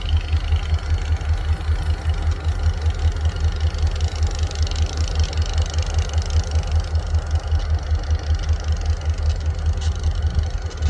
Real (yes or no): yes